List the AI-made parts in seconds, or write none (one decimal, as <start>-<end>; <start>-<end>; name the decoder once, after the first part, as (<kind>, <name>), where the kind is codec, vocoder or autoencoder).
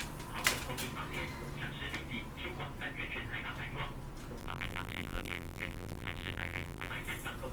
4.4-6.9 (vocoder, BigVGAN v2)